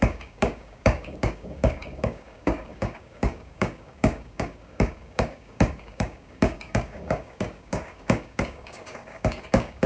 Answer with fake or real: fake